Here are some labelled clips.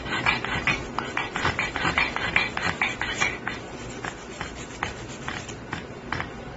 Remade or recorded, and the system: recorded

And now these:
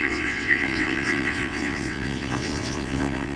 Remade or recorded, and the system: remade, vocoder, WaveNeXt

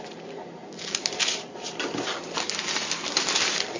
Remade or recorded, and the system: recorded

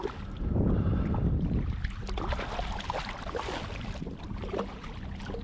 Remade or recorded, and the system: remade, vocoder, BigVGAN v2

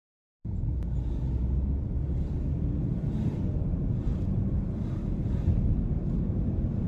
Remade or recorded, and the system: recorded